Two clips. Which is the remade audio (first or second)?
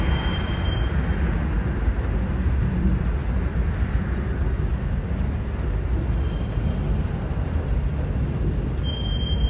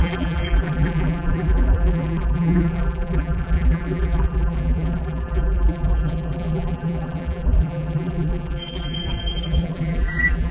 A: second